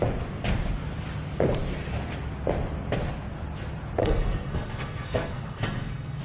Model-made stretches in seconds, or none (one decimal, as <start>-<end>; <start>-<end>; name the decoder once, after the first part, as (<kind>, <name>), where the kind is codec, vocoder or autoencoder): 4.0-6.2 (codec, SNAC)

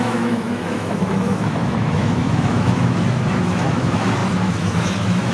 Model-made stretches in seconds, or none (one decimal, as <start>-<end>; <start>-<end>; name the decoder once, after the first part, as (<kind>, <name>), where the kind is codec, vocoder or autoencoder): 0.0-5.3 (autoencoder, DAC-VAE)

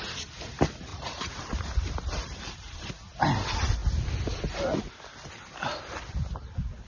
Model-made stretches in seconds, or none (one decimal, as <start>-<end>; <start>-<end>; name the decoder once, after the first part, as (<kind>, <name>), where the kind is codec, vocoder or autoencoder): 0.9-2.9 (vocoder, BigVGAN v2)

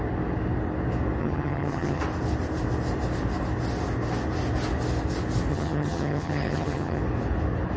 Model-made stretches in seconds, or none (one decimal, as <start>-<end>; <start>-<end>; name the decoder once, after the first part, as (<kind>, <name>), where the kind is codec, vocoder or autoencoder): 1.2-2.0 (vocoder, HiFi-GAN); 5.5-7.0